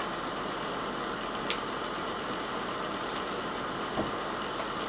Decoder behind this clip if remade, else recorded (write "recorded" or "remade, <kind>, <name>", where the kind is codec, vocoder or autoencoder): recorded